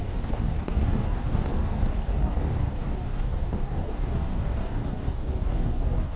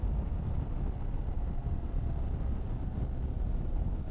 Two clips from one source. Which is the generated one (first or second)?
first